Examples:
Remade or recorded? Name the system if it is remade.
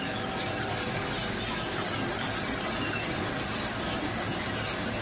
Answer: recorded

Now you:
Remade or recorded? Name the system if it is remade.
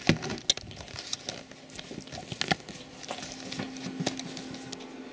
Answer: recorded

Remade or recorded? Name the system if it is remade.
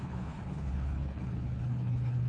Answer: remade, codec, HILCodec